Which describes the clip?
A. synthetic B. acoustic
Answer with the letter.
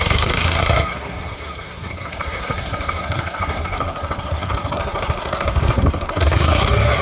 A